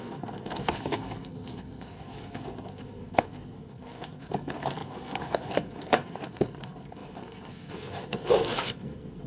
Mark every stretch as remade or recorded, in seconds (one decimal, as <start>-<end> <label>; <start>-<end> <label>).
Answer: 0.0-9.3 remade